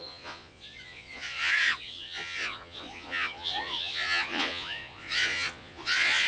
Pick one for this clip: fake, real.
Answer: fake